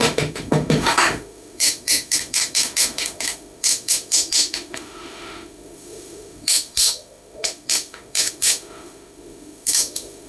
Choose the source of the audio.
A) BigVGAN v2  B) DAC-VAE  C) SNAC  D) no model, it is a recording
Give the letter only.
B